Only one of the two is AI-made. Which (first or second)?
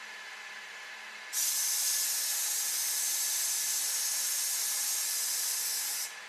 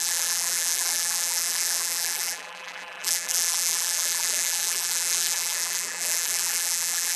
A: second